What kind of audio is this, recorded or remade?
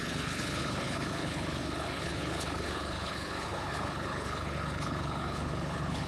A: remade